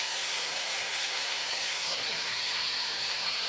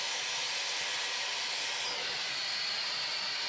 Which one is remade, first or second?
first